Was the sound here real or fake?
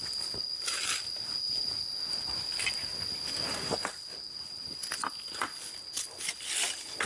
real